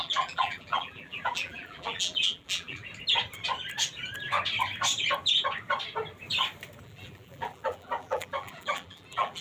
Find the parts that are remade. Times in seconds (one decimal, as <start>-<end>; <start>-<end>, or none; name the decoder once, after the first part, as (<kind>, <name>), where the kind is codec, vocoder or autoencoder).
0.0-2.8 (vocoder, BigVGAN v2); 6.8-9.4